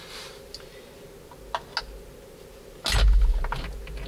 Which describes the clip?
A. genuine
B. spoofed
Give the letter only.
A